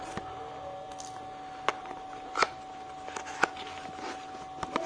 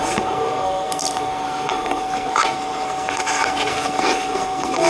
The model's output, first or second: second